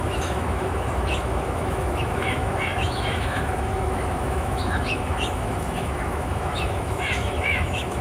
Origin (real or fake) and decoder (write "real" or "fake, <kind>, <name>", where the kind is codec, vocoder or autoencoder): fake, autoencoder, DAC-VAE